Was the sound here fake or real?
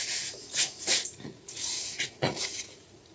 fake